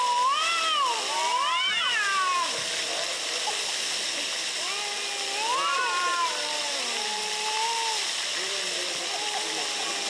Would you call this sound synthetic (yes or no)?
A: no